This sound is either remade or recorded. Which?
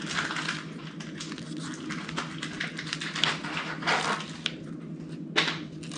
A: recorded